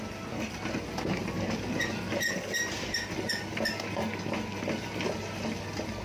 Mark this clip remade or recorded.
recorded